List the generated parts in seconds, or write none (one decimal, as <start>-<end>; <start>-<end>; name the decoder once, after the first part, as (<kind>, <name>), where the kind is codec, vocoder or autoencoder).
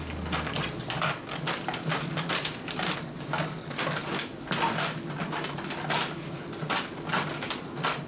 none